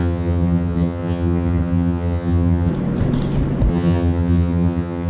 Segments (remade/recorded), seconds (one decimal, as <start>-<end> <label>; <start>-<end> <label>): 0.0-2.7 remade; 2.7-3.7 recorded; 3.7-5.1 remade